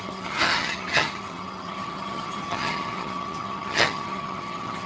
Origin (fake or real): fake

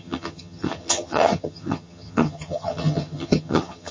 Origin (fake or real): fake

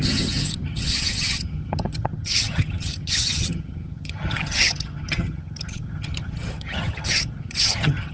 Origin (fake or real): fake